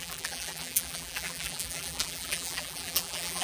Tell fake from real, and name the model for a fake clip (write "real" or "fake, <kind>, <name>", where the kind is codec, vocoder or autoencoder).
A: fake, vocoder, BigVGAN v2